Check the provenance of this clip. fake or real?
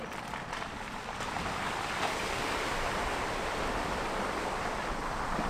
fake